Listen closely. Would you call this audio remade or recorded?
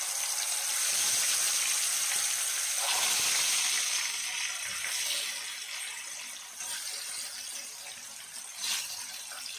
recorded